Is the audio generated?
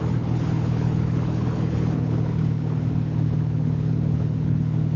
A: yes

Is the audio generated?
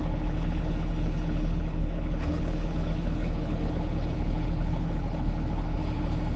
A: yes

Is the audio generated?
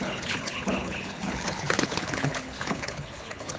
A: yes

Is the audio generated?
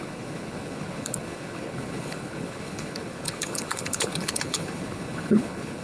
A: yes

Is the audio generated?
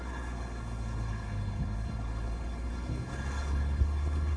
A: yes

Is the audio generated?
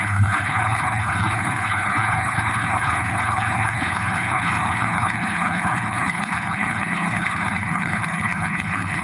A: yes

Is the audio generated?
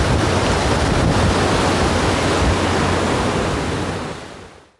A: no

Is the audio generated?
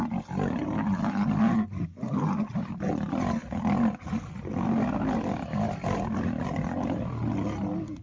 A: no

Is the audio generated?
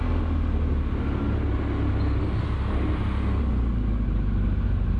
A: no